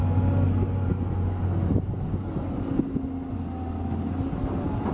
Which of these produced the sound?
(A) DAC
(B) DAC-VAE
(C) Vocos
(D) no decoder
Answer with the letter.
D